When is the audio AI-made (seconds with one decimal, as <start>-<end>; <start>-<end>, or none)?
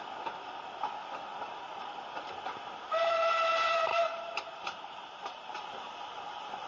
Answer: 3.9-5.6